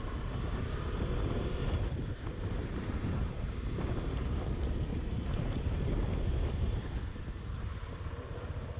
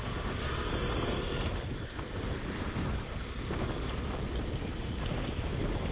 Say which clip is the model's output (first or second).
first